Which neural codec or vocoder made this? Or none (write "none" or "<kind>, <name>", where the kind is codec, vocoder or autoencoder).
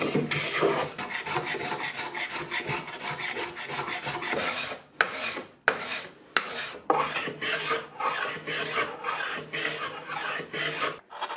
none